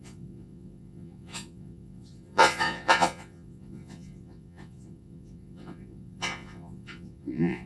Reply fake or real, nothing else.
fake